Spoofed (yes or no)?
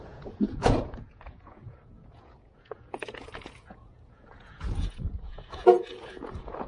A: yes